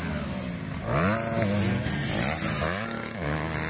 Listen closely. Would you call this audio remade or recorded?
recorded